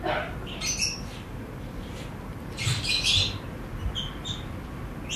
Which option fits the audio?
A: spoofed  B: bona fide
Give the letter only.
B